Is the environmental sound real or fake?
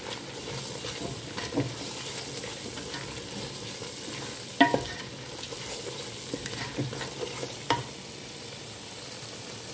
real